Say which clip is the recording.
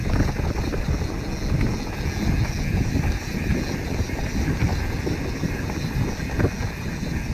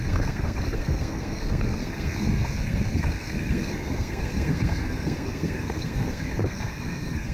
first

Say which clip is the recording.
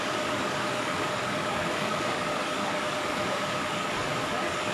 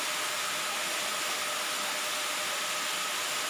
second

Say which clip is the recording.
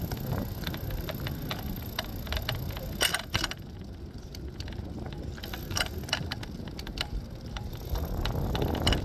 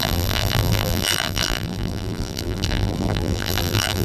first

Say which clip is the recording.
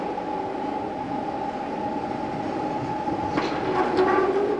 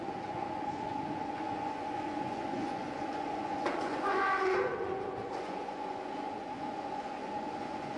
first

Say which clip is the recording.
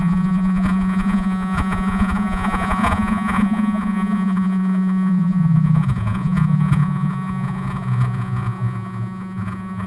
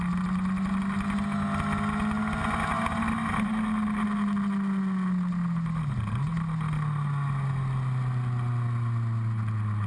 second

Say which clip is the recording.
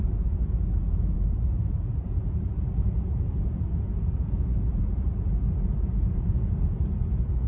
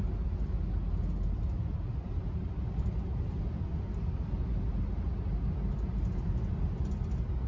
second